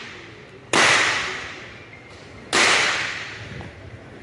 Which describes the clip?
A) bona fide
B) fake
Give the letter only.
A